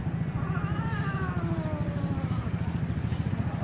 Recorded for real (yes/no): yes